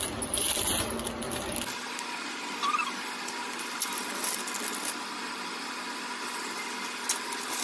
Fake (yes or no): no